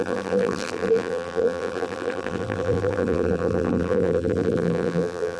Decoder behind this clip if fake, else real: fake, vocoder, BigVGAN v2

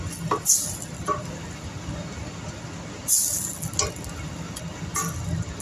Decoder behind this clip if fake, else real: real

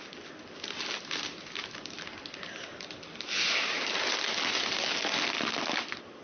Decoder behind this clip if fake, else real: real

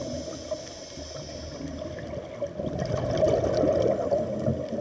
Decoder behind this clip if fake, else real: real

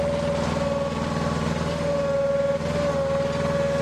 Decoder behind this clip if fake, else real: real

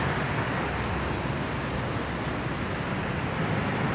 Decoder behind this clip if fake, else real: real